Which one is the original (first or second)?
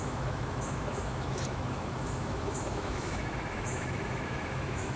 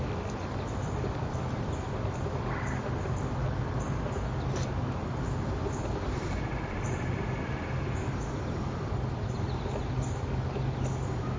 second